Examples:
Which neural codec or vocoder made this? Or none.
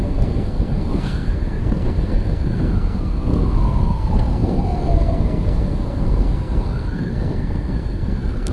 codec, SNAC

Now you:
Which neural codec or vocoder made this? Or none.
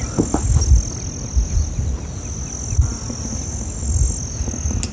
none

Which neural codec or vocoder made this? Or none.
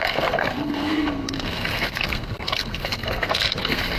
codec, SNAC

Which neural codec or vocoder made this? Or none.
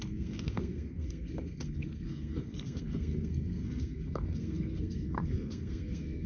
codec, SNAC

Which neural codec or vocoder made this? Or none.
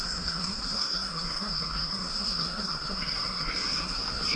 codec, SNAC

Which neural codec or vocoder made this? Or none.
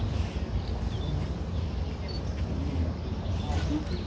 none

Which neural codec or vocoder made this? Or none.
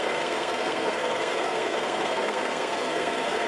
codec, SNAC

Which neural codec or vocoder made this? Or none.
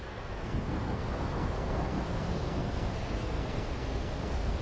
codec, SNAC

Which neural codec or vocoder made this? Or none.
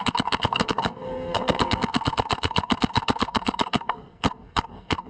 codec, SNAC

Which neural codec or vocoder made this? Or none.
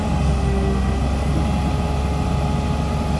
none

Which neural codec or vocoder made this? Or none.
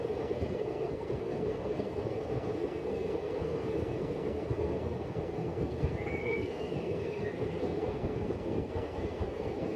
codec, SNAC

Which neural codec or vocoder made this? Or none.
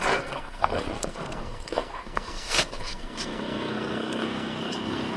codec, SNAC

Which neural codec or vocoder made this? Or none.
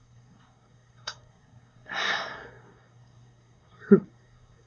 codec, SNAC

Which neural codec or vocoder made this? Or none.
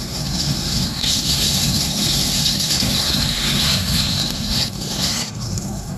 codec, SNAC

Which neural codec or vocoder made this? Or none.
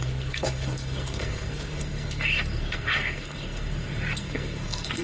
codec, SNAC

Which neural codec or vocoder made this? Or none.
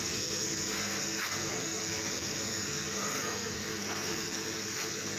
codec, SNAC